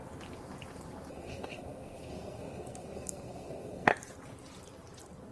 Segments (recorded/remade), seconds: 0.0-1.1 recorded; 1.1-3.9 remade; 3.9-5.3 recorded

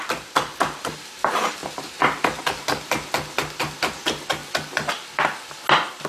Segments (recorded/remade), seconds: 0.0-6.1 recorded

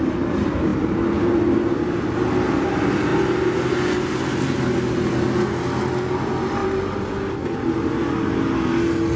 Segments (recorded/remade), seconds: 0.0-9.2 recorded

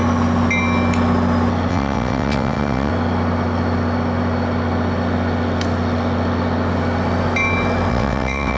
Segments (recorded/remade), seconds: 0.0-1.7 recorded; 1.7-2.9 remade; 2.9-7.9 recorded; 7.9-8.6 remade

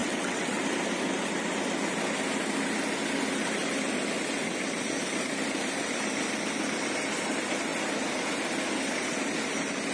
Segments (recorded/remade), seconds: 0.0-0.6 remade; 0.6-9.9 recorded

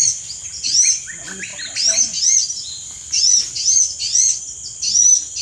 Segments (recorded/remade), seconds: 0.0-5.4 recorded

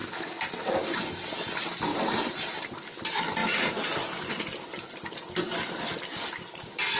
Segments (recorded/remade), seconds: 0.0-1.9 recorded; 1.9-2.6 remade; 2.6-3.4 recorded; 3.4-4.3 remade; 4.3-7.0 recorded

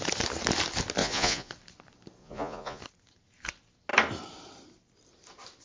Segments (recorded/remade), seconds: 0.0-1.0 recorded; 1.0-1.5 remade; 1.5-2.2 recorded; 2.2-2.8 remade; 2.8-5.6 recorded